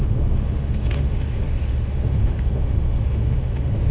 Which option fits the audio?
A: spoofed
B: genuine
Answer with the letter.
A